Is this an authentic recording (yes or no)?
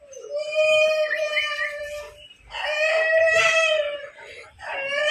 no